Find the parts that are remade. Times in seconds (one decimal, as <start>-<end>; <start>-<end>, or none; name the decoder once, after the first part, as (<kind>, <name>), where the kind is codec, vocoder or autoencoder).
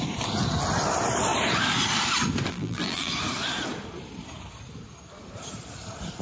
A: 2.5-3.1 (vocoder, BigVGAN v2)